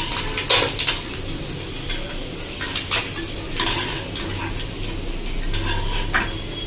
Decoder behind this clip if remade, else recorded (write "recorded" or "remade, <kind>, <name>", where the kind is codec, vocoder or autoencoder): recorded